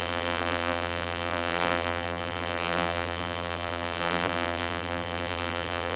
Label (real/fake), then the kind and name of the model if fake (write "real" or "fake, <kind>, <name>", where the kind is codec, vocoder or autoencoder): fake, vocoder, BigVGAN v2